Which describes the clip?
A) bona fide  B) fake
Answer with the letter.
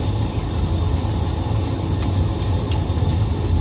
A